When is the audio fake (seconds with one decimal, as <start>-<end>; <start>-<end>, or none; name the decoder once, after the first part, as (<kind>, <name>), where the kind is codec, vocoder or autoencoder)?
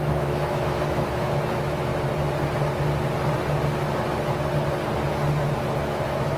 0.0-1.9 (autoencoder, DAC-VAE); 5.7-6.4